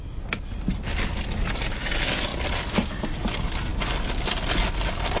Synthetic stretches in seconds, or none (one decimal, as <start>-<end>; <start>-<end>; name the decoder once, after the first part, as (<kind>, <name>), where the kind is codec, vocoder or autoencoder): none